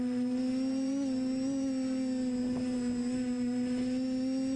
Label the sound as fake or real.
real